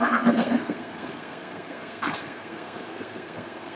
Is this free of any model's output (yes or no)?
no